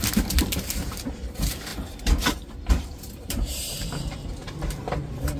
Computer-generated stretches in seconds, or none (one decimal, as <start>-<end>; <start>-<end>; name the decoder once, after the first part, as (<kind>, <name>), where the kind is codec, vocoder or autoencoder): 0.0-1.7 (vocoder, BigVGAN v2); 2.8-5.4